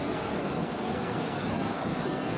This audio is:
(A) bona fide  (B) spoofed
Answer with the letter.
B